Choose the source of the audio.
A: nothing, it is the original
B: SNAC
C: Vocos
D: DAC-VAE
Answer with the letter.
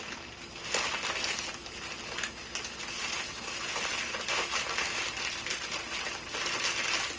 A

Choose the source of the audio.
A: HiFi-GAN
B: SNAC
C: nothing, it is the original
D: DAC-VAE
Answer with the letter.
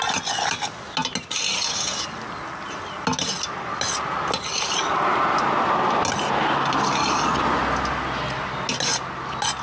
C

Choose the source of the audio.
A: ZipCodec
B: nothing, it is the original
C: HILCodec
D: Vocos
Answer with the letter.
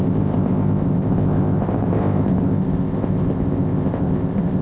A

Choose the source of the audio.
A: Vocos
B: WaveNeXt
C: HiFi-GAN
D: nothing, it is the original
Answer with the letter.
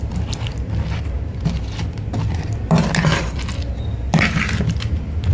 D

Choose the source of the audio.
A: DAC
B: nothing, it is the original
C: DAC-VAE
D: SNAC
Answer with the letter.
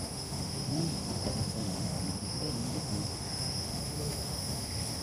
C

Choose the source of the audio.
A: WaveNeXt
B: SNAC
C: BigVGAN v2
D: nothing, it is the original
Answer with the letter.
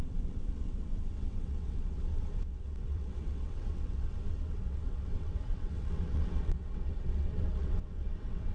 A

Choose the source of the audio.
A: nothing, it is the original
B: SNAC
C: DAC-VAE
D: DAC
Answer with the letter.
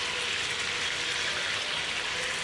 A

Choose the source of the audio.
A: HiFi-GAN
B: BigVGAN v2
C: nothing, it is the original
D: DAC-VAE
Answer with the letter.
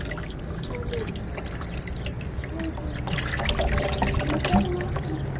C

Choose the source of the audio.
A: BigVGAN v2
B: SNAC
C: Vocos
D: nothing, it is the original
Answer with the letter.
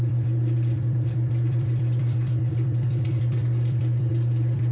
A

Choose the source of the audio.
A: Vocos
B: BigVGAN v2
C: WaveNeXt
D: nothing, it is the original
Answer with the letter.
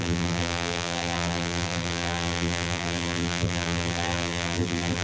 B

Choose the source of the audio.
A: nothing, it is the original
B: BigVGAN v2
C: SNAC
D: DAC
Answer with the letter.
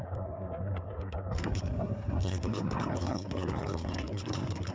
C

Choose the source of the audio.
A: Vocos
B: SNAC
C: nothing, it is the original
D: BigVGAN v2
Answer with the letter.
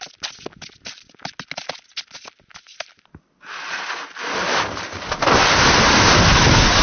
C